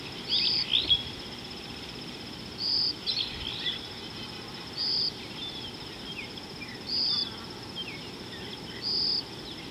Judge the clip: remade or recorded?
recorded